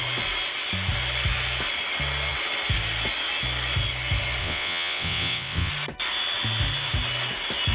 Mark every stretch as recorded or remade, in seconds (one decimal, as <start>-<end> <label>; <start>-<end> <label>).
0.0-4.4 recorded; 4.4-5.7 remade; 5.7-7.7 recorded